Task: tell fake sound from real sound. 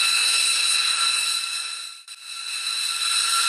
real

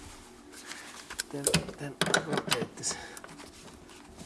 real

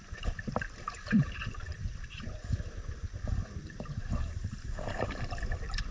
fake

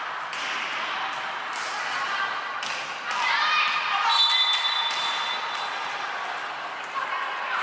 real